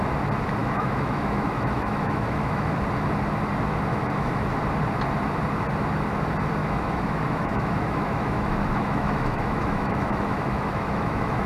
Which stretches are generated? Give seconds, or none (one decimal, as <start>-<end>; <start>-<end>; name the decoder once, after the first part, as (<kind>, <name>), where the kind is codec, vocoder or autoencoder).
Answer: 0.6-2.7 (autoencoder, DAC-VAE); 3.9-4.5; 6.6-11.5